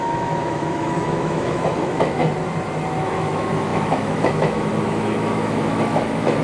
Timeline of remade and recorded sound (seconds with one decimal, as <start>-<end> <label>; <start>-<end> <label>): 0.0-2.2 remade; 2.2-3.0 recorded; 3.0-6.4 remade